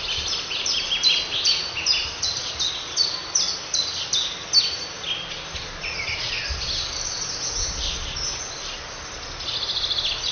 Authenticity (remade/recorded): recorded